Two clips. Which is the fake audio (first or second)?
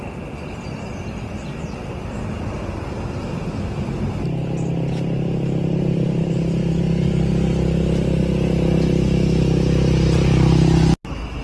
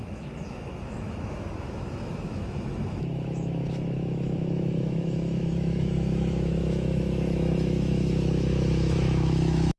second